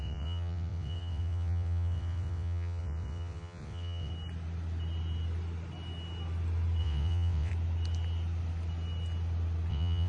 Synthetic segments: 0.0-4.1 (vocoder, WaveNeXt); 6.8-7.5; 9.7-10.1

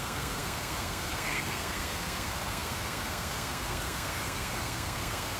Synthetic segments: 0.0-5.4 (codec, SNAC)

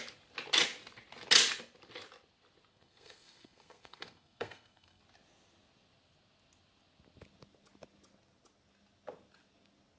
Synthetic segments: 2.7-5.0 (codec, SNAC)